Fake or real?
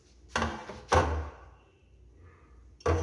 real